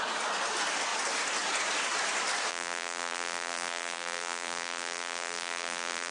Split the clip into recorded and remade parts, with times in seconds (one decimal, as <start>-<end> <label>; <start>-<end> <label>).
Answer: 0.0-2.5 recorded; 2.5-6.1 remade